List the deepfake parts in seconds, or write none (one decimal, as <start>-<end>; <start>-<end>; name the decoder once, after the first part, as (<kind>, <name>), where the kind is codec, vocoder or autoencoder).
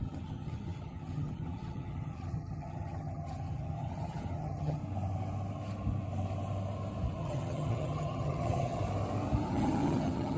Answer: 0.0-4.8 (vocoder, HiFi-GAN); 7.2-8.8; 9.5-10.4